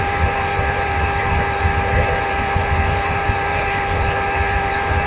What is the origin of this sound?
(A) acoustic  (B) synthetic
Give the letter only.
B